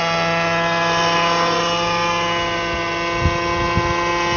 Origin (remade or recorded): recorded